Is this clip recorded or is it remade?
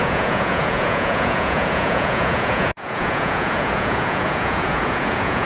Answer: remade